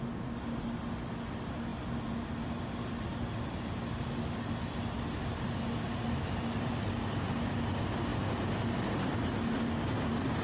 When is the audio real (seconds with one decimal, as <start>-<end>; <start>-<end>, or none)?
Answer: 0.0-10.4